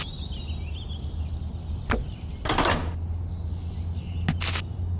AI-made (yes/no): no